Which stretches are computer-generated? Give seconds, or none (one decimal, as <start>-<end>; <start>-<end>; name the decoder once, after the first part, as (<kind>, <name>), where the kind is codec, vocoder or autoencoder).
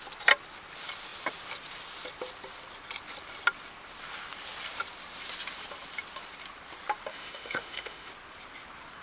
7.1-8.1 (autoencoder, DAC-VAE)